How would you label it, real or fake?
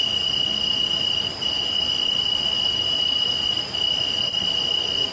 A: fake